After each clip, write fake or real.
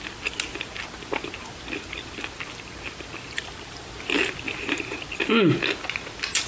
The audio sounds real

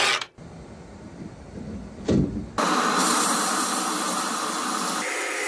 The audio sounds real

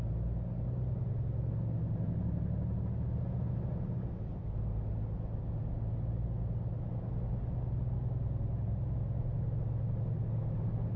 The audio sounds real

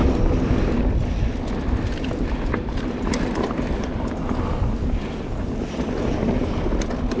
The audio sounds real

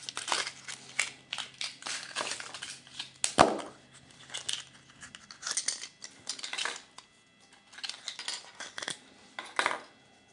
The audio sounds real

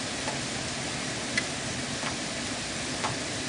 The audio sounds real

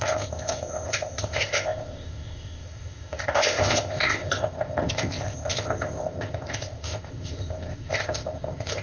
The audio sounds fake